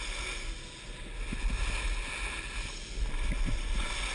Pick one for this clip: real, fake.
real